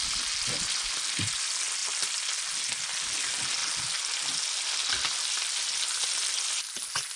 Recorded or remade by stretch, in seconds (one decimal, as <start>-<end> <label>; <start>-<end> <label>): 0.0-7.2 recorded